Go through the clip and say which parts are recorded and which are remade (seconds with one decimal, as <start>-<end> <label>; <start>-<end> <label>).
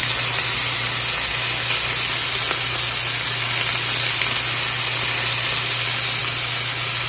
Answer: 0.0-7.1 recorded